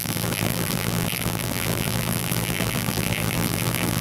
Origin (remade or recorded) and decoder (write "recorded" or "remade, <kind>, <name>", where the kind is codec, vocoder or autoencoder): remade, vocoder, BigVGAN v2